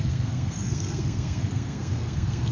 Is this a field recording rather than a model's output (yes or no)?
no